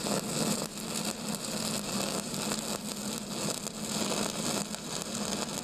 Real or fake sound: real